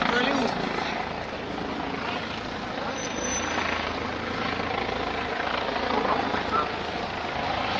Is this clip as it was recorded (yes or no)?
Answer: yes